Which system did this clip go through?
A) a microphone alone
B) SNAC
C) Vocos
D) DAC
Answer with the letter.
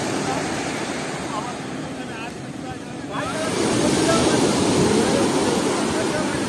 A